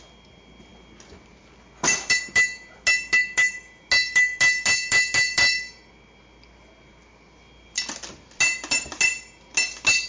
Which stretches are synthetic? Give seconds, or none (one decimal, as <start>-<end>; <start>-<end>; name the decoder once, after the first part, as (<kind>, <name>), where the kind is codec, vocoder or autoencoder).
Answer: none